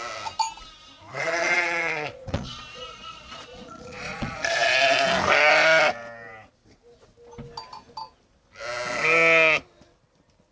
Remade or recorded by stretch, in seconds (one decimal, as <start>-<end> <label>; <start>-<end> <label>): 0.0-1.1 recorded; 1.1-4.4 remade; 4.4-10.5 recorded